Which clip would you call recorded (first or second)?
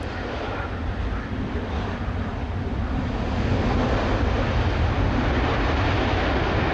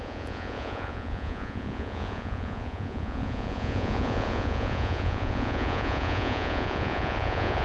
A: first